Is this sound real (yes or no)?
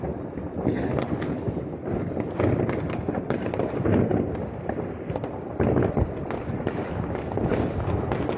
yes